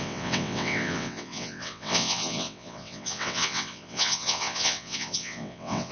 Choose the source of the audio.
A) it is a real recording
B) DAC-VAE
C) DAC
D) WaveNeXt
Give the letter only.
D